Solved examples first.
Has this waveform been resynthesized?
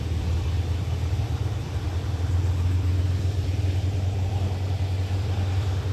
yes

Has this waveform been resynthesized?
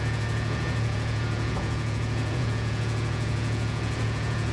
yes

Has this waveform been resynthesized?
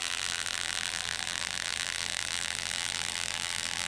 yes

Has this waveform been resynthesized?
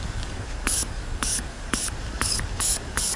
yes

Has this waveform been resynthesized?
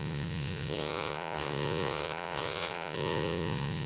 yes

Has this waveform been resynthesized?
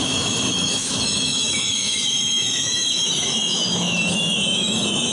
yes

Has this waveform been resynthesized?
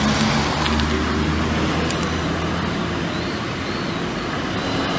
no